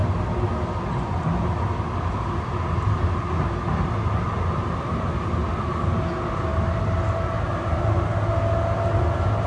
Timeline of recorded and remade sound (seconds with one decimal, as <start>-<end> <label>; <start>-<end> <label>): 0.0-9.5 recorded